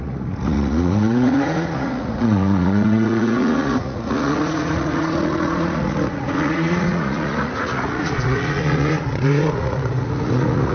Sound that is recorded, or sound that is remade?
remade